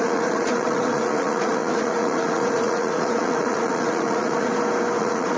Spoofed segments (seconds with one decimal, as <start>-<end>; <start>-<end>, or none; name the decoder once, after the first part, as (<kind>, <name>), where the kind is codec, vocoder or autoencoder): 0.0-4.5 (vocoder, Vocos); 5.0-5.4